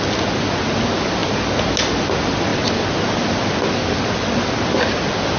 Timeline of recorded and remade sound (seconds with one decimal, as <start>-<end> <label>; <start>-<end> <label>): 0.0-5.4 recorded